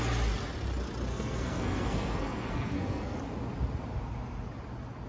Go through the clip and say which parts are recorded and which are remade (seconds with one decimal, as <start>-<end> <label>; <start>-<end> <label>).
0.0-1.1 recorded; 1.1-3.2 remade; 3.2-5.1 recorded